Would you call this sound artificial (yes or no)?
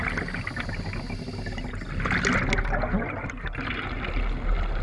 no